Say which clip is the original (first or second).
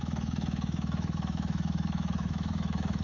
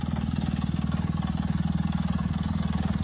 second